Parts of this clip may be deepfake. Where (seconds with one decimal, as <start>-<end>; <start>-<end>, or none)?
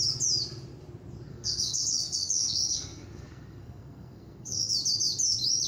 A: 1.3-4.7